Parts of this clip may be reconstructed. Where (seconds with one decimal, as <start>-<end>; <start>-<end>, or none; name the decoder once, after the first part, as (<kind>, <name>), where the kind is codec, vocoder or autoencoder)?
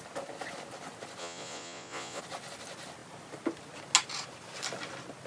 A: 1.2-2.2 (vocoder, Vocos)